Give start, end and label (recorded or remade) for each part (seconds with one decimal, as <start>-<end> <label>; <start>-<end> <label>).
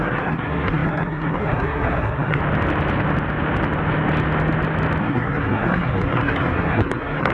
0.0-2.4 remade; 2.4-5.0 recorded; 5.0-7.3 remade